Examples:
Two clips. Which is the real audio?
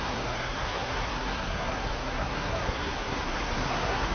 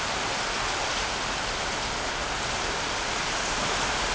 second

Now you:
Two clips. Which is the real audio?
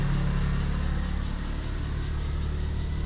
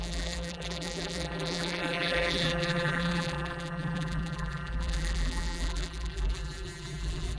first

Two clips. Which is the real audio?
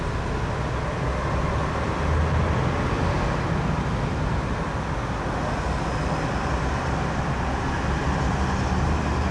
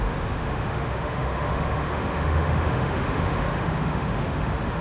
first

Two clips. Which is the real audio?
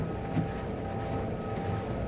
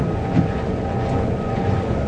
first